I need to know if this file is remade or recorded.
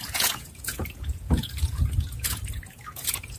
remade